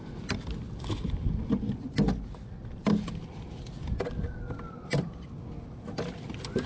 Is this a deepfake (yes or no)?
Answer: no